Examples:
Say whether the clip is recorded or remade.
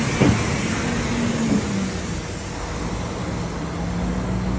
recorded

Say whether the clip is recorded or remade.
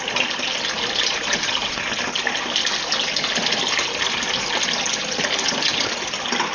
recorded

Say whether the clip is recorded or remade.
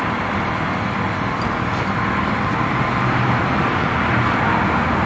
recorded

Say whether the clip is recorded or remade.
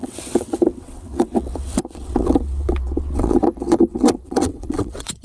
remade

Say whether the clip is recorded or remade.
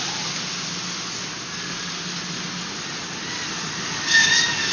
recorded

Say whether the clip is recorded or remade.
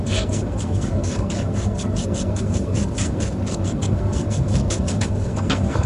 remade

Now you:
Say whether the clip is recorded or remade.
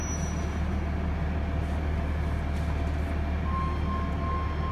recorded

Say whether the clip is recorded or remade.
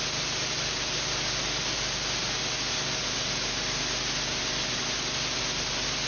recorded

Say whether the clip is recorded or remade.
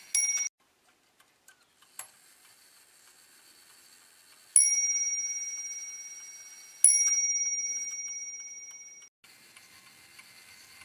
recorded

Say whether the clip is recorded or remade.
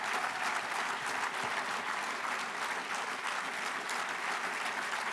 recorded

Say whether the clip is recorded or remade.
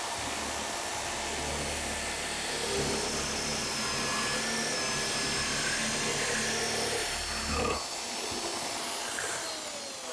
recorded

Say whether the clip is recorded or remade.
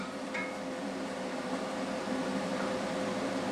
remade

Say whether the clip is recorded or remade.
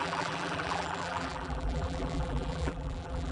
remade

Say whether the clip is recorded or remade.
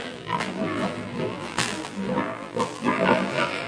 remade